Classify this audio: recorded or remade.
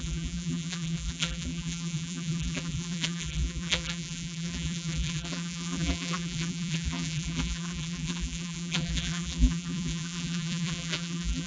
remade